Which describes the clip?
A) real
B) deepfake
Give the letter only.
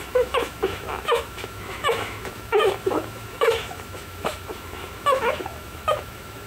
B